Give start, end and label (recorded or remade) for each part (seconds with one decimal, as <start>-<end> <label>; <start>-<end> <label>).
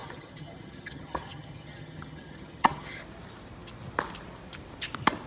0.0-3.0 remade; 3.0-5.3 recorded